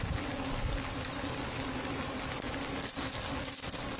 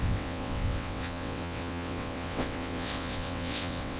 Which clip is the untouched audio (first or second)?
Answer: first